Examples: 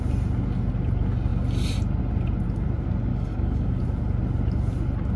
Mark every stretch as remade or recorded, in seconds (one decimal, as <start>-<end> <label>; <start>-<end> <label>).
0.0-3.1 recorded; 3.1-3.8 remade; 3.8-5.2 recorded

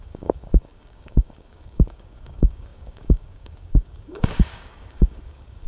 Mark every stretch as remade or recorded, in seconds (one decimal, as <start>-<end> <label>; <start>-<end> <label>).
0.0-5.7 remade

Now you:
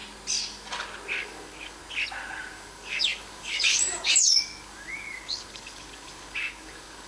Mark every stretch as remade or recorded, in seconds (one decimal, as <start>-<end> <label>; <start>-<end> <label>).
0.0-1.2 recorded; 1.2-1.8 remade; 1.8-2.5 recorded; 2.5-7.1 remade